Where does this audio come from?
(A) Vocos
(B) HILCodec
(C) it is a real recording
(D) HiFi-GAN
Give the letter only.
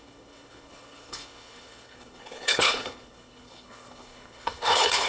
B